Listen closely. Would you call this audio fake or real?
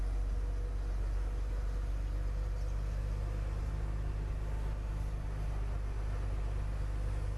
real